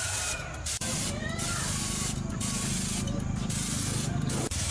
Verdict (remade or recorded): remade